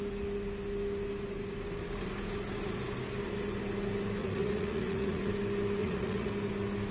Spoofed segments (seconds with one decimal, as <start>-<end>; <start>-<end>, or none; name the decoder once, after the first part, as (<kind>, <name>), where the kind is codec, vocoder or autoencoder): 4.2-5.3 (vocoder, Vocos); 5.8-6.3